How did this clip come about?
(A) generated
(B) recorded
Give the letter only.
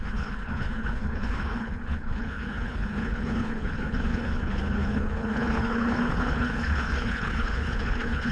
A